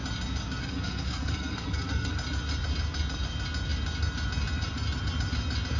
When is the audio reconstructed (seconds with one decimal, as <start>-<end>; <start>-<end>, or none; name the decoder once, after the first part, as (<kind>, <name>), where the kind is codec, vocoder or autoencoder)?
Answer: 0.6-2.1 (codec, SNAC)